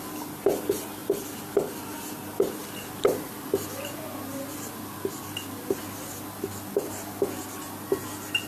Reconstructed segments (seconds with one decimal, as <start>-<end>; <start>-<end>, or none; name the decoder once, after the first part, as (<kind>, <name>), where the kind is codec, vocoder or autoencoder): none